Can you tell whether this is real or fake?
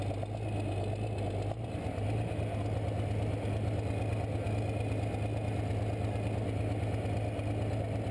real